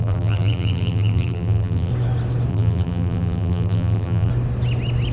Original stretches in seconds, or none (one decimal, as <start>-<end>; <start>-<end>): 1.9-2.5; 4.3-5.1